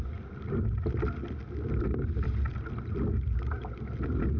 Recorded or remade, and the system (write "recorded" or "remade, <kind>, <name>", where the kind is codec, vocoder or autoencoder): recorded